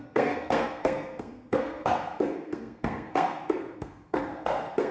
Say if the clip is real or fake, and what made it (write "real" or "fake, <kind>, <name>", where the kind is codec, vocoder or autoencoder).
fake, codec, SNAC